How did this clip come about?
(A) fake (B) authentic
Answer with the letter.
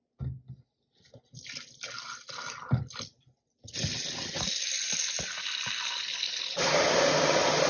B